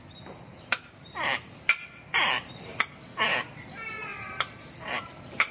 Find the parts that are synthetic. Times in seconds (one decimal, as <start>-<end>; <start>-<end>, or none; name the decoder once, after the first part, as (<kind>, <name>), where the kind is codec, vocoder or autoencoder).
0.5-2.8 (vocoder, BigVGAN v2); 4.1-5.5